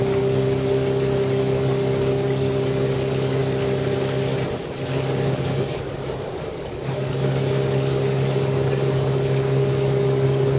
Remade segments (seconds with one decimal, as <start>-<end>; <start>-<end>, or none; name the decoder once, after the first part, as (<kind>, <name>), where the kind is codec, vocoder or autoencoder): 0.0-3.4 (codec, DAC); 4.9-10.6

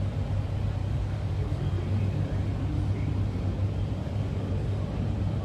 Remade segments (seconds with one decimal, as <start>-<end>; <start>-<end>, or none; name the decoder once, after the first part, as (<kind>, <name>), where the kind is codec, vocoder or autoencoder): 0.8-1.7 (codec, DAC); 4.0-4.5

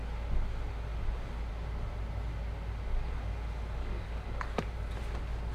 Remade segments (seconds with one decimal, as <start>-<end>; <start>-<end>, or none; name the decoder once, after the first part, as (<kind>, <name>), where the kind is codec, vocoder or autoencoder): 3.8-4.6 (codec, DAC)

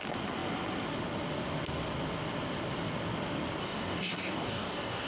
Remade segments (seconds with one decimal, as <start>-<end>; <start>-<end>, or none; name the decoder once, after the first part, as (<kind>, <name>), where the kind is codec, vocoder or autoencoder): 3.6-5.1 (codec, DAC)